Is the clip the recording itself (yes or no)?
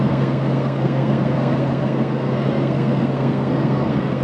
no